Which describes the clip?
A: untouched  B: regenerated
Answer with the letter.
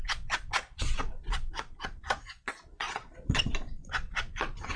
B